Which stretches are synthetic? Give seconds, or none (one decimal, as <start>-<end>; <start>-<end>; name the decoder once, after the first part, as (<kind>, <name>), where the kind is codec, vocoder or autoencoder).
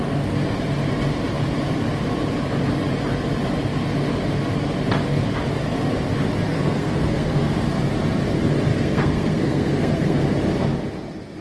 6.5-7.5 (codec, SNAC); 8.7-10.2